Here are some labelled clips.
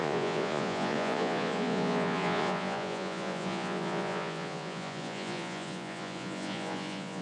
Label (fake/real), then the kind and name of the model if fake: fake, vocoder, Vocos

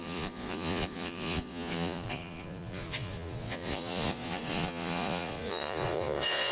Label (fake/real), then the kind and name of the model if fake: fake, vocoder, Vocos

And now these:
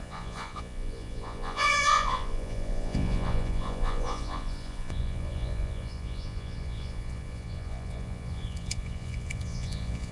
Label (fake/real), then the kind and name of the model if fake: fake, vocoder, Vocos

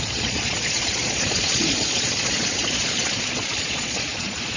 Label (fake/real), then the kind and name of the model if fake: fake, vocoder, Vocos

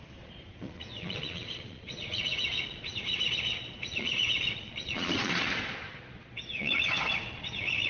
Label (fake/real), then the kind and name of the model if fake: fake, vocoder, Vocos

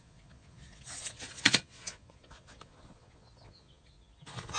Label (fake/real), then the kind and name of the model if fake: fake, vocoder, Vocos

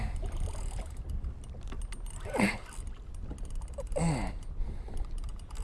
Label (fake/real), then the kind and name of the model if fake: real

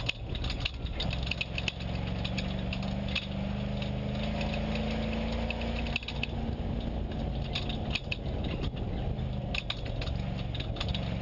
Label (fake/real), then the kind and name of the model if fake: real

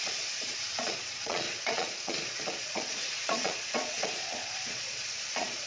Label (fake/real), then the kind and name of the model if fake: fake, vocoder, Vocos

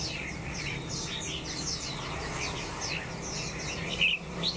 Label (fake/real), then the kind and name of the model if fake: real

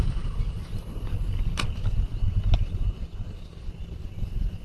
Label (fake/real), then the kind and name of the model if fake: real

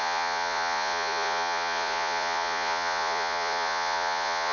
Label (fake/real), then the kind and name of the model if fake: fake, vocoder, Vocos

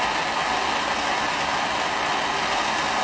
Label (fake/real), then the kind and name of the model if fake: real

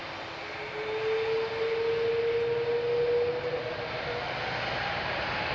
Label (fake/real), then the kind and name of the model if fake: real